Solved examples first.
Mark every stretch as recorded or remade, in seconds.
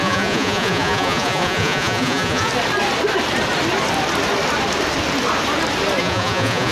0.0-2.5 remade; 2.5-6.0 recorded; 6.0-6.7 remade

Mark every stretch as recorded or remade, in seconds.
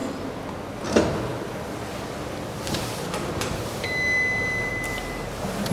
0.0-5.7 recorded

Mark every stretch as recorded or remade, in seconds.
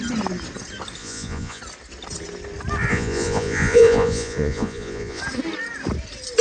0.0-1.0 recorded; 1.0-1.6 remade; 1.6-2.9 recorded; 2.9-5.2 remade; 5.2-6.4 recorded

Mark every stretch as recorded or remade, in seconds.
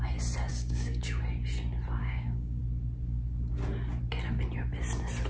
0.0-0.5 recorded; 0.5-1.2 remade; 1.2-2.0 recorded; 2.0-2.6 remade; 2.6-5.3 recorded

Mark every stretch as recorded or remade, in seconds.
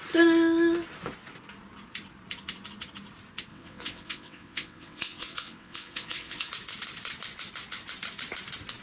0.0-3.5 recorded; 3.5-6.5 remade; 6.5-8.8 recorded